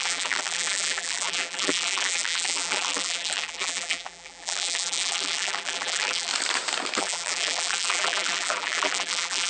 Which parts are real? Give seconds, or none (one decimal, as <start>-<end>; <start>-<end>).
6.3-7.0